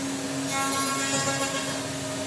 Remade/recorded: recorded